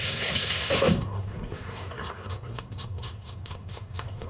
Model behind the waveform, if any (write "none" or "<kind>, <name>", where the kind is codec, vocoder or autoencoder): codec, SNAC